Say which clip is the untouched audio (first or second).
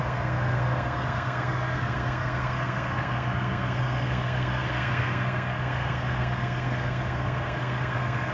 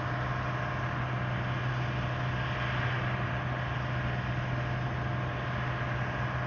second